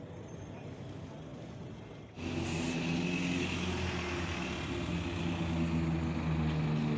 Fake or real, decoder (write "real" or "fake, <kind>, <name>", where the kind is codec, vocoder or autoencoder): real